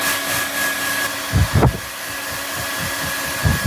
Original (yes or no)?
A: yes